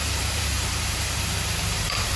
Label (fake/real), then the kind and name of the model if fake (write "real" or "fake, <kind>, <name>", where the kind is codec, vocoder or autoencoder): fake, vocoder, BigVGAN v2